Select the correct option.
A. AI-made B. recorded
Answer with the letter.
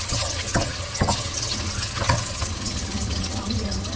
A